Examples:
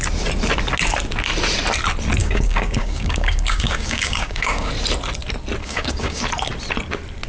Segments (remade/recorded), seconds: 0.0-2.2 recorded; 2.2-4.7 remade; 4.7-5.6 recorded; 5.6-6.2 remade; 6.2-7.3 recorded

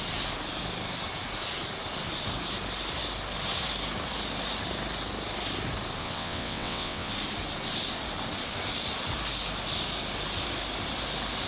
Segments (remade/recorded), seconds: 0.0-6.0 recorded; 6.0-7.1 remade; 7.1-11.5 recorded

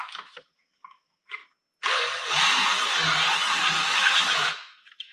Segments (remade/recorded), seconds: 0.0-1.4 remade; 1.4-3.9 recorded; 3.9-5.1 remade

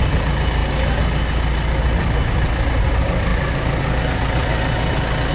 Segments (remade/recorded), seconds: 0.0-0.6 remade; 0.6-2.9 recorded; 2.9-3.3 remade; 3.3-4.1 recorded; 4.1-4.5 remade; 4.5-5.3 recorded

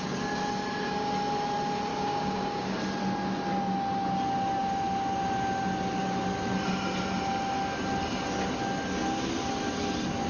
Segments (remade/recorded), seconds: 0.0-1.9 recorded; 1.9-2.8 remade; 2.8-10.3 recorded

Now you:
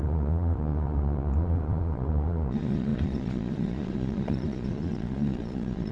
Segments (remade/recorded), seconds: 0.0-5.9 remade

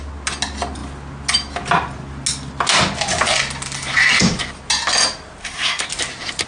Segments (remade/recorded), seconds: 0.0-5.4 recorded; 5.4-5.9 remade; 5.9-6.5 recorded

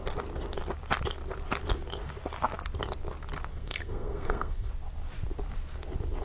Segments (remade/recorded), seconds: 0.0-3.5 recorded; 3.5-4.7 remade; 4.7-6.2 recorded